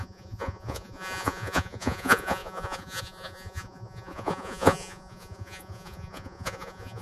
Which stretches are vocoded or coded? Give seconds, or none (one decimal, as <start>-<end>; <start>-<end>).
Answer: 0.0-7.0

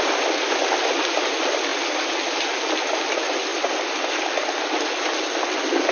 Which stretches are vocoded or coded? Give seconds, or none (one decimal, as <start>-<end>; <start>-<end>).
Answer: none